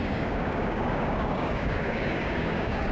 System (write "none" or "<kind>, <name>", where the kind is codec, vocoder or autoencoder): codec, DAC